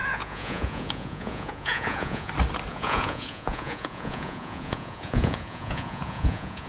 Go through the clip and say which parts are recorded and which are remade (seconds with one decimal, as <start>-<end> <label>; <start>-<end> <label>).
0.0-2.3 remade; 2.3-2.7 recorded; 2.7-6.7 remade